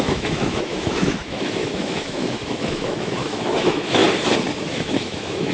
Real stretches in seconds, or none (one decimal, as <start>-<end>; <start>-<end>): 4.0-4.7